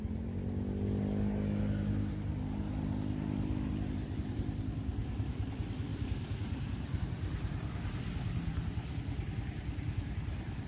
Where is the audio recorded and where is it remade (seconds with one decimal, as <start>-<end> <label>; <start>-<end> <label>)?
0.0-10.7 recorded